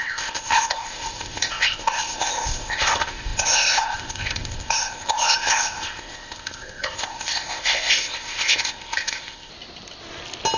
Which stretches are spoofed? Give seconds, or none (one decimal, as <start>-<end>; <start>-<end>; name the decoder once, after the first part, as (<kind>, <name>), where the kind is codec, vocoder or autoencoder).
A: 0.0-9.5 (codec, ZipCodec)